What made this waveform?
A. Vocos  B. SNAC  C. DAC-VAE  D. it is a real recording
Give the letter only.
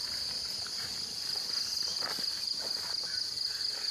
D